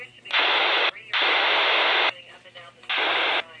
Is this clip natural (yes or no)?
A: yes